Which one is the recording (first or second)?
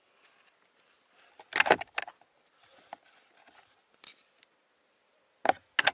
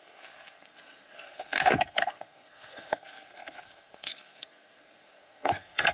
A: first